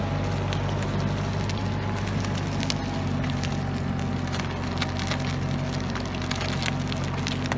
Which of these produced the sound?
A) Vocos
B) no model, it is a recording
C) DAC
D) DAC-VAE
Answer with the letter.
B